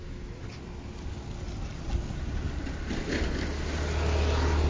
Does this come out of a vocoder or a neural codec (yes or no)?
no